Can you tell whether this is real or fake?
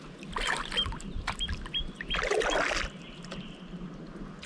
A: real